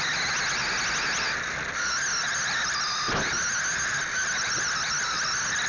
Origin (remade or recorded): recorded